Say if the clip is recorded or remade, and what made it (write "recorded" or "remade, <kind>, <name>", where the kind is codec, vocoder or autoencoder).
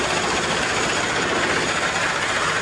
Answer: recorded